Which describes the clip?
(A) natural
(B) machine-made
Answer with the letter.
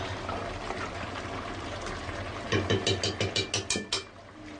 A